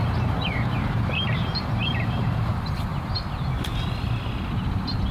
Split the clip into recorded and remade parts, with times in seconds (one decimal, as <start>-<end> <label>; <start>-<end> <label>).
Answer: 0.0-3.1 remade; 3.1-5.1 recorded